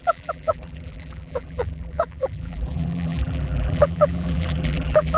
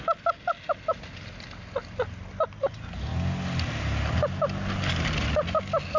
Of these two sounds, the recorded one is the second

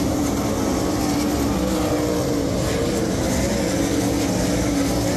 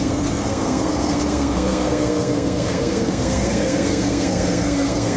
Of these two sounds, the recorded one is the first